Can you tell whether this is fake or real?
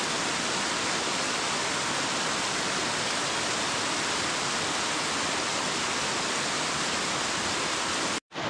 real